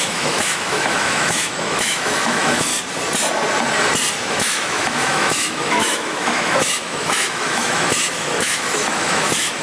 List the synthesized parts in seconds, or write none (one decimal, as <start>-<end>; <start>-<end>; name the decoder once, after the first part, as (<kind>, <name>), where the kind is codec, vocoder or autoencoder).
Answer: 0.0-2.7 (autoencoder, DAC-VAE); 4.3-9.6